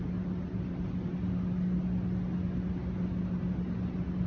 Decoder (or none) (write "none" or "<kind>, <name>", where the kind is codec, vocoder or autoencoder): none